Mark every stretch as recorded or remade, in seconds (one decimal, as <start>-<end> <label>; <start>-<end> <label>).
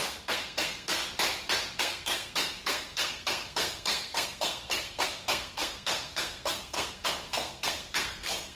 0.0-1.0 remade; 1.0-1.8 recorded; 1.8-8.6 remade